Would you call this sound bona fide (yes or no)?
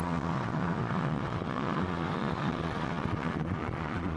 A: no